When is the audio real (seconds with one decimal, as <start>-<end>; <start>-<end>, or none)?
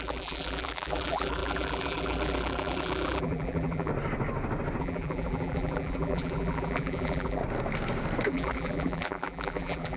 3.9-4.8; 7.4-8.3